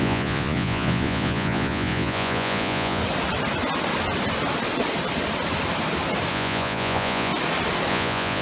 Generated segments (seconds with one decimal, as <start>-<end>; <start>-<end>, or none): 0.0-3.0; 6.3-7.3; 7.9-8.4